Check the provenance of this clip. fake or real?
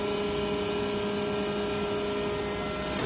real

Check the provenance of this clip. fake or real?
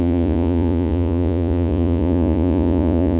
fake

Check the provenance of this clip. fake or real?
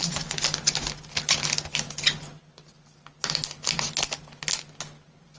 real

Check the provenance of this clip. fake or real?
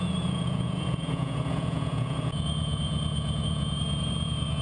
fake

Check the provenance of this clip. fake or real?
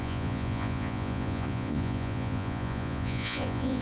fake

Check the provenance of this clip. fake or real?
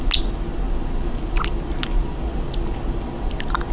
real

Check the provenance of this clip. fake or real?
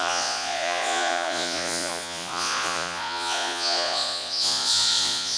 fake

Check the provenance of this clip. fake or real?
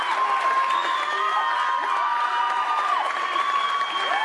real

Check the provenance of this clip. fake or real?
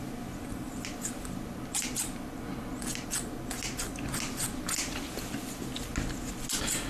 real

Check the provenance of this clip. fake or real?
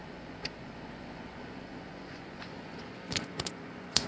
fake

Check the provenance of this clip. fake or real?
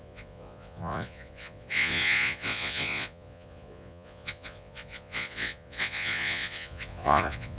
fake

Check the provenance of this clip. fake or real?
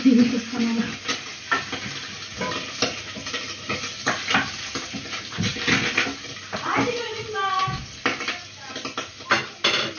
real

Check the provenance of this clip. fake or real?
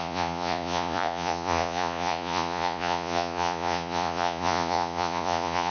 fake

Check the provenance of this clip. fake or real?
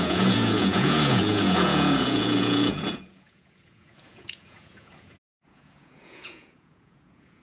fake